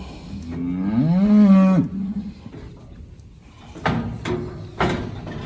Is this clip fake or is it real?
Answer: real